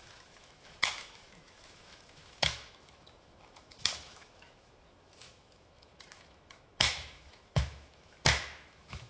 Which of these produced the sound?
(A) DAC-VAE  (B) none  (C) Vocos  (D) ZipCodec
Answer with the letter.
A